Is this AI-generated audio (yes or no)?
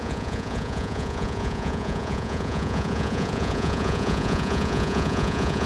yes